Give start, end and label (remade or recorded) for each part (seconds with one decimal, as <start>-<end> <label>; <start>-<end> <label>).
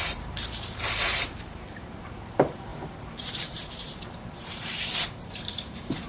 0.0-6.1 remade